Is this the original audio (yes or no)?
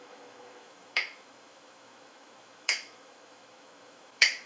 no